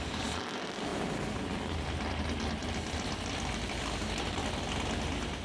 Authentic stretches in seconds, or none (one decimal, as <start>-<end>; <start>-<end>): 0.0-0.9; 2.2-2.6; 4.6-5.4